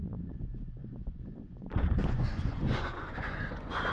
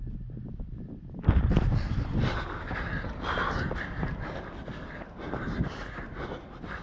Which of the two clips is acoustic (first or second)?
second